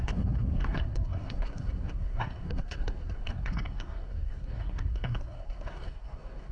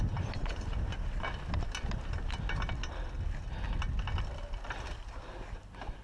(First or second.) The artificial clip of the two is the first